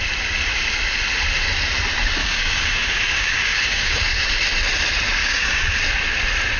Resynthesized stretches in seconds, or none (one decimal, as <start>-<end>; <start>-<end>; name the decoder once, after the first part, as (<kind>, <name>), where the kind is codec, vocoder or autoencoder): 2.2-4.0 (codec, DAC); 5.2-5.8